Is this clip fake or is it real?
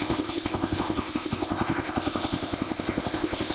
fake